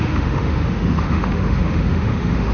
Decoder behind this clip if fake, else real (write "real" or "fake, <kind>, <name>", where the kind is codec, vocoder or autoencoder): fake, autoencoder, DAC-VAE